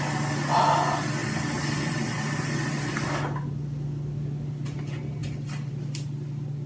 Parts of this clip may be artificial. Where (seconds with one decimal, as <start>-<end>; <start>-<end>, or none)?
none